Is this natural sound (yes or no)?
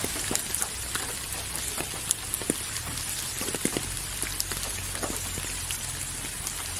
yes